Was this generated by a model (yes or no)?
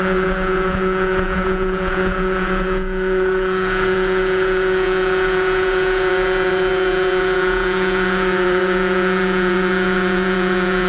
yes